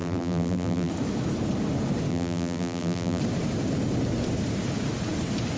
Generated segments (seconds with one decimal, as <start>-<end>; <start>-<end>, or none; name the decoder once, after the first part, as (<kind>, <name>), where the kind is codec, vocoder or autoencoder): 0.0-0.9 (vocoder, BigVGAN v2); 2.1-3.2